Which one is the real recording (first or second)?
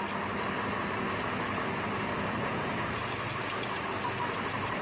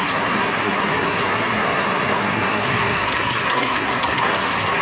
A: first